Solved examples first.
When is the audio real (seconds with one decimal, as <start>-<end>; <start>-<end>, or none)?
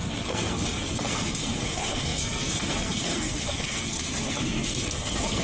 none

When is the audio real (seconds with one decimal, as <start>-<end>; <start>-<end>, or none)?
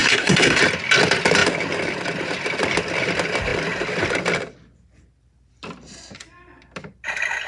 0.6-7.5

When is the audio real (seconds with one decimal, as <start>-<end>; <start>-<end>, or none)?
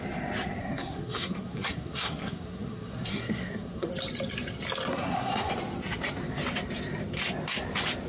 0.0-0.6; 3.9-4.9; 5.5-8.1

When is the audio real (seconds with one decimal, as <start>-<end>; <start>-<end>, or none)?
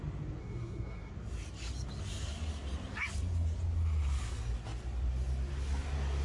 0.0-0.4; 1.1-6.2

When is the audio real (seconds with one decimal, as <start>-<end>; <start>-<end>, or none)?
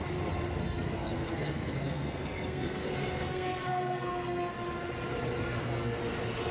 0.0-0.6; 4.5-5.4; 6.0-6.5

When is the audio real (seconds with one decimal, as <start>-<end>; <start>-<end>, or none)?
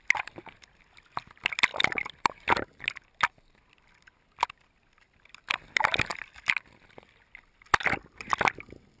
0.0-9.0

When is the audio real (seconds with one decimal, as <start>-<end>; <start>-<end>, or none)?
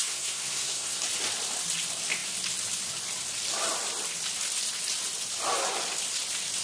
1.0-6.6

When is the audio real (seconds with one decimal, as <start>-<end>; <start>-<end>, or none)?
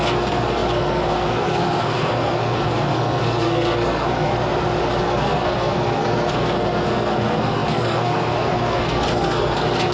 4.3-5.0